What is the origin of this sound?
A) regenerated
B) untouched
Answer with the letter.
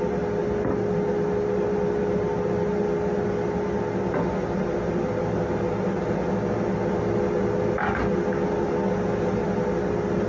B